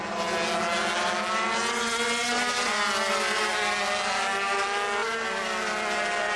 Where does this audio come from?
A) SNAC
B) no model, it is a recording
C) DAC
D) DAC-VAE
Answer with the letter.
B